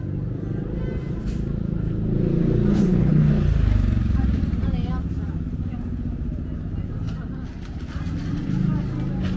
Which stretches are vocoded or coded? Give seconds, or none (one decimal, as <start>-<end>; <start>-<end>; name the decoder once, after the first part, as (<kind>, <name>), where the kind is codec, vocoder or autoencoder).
2.7-3.3 (codec, HILCodec)